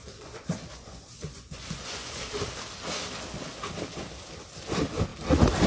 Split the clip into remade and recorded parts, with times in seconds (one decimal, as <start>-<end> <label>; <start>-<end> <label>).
0.0-2.2 remade; 2.2-5.7 recorded